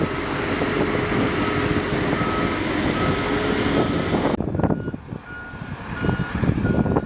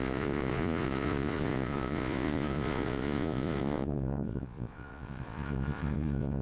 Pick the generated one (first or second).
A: second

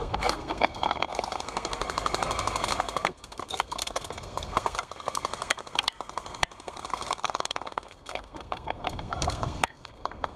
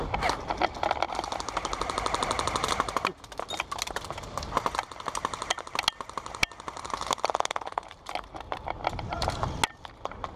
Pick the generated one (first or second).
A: first